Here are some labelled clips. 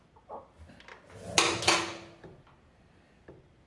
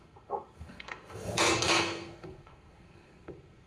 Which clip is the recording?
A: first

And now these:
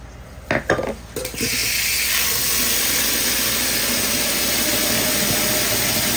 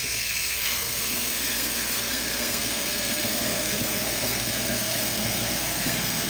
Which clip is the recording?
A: first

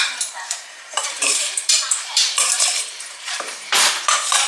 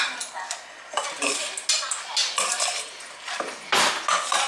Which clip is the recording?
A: second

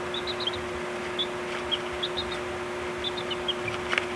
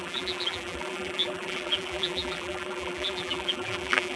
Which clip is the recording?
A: first